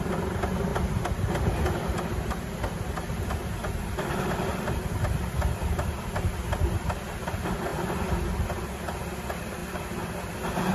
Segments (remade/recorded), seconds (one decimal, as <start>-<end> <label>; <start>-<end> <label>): 0.0-10.7 recorded